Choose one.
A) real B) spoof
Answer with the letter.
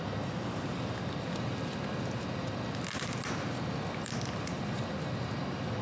A